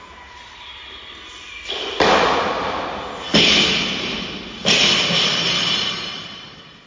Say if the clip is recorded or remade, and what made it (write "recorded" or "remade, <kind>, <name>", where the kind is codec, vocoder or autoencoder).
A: recorded